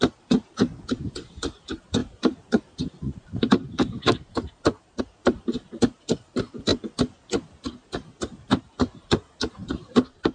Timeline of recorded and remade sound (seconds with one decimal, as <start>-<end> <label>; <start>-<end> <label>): 0.0-6.7 remade; 6.7-8.6 recorded; 8.6-10.3 remade